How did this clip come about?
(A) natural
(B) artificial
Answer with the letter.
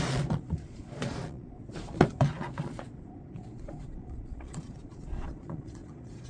B